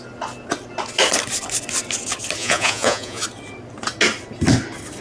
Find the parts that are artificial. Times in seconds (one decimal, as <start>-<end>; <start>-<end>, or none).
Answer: 2.4-3.2